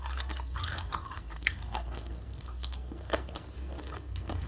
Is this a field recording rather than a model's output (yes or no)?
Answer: no